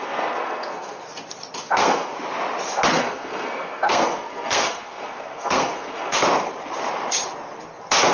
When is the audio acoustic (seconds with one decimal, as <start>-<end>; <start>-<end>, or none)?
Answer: 1.0-1.6; 2.1-2.9; 6.2-8.1

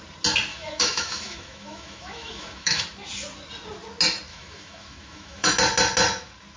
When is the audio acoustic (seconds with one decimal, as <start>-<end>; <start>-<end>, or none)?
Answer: 0.0-0.5; 2.8-4.3; 5.5-6.6

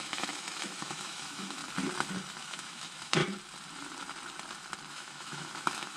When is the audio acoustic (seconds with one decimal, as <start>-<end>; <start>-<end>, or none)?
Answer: 1.6-2.4; 3.2-4.9

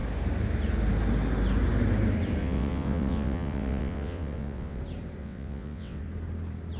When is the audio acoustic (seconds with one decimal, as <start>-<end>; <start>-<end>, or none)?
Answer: 0.0-2.4; 4.8-5.2; 6.0-6.8

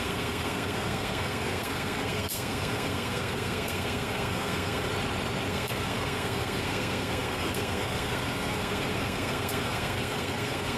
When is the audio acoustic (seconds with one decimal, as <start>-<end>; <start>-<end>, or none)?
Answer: 4.9-5.5